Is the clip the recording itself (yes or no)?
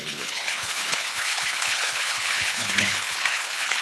no